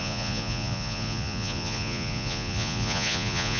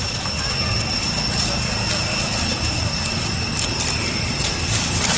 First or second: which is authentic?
second